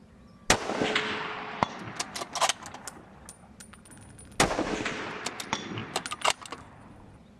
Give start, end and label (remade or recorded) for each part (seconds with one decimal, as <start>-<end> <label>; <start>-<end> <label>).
0.0-7.4 recorded